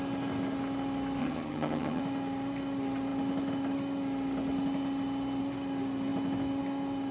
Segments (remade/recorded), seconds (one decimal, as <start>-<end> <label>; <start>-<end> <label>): 0.0-1.2 recorded; 1.2-2.0 remade; 2.0-7.1 recorded